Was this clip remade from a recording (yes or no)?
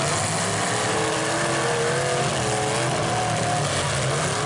no